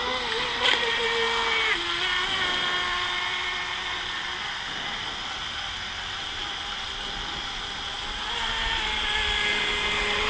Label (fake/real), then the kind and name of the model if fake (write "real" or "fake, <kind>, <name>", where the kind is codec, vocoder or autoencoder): real